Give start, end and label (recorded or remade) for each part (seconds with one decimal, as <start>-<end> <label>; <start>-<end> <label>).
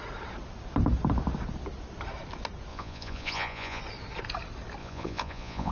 0.0-2.7 recorded; 2.7-3.8 remade; 3.8-4.8 recorded; 4.8-5.7 remade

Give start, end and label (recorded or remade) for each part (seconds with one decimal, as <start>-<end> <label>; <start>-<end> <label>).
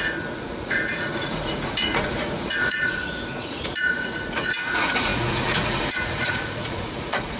0.0-7.4 remade